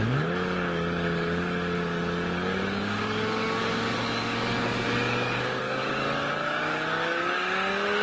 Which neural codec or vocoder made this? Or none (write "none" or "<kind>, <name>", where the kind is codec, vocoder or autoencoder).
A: codec, DAC